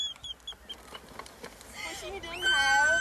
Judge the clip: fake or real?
real